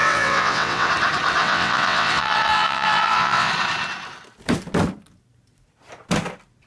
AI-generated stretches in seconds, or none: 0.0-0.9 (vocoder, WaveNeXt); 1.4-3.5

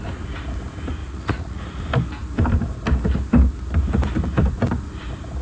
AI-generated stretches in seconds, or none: 1.0-1.6 (vocoder, Vocos)

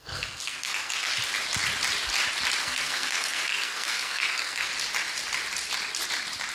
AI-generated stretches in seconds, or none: 0.0-1.1 (codec, SNAC); 2.6-4.7

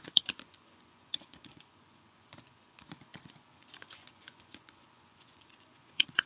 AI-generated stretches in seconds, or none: 0.0-6.3 (vocoder, Vocos)

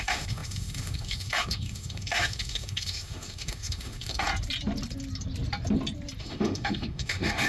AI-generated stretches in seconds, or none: 0.0-4.3 (autoencoder, DAC-VAE); 6.2-7.5